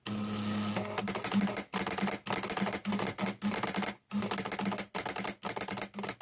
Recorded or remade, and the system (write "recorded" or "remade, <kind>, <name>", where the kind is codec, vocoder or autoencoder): recorded